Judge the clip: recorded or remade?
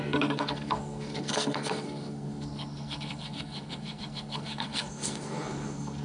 remade